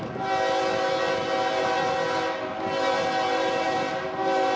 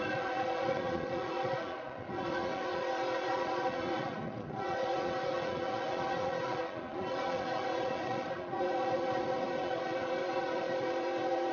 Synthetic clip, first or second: second